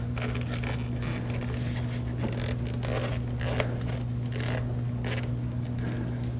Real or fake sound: real